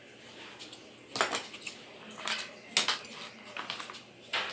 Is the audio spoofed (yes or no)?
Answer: no